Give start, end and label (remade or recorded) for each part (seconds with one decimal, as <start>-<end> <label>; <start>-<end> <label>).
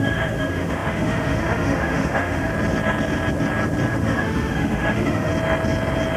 0.0-2.5 remade; 2.5-3.9 recorded; 3.9-5.3 remade; 5.3-6.2 recorded